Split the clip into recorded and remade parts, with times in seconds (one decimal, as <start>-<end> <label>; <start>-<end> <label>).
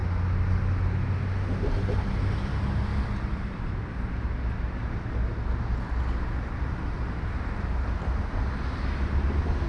0.0-9.7 recorded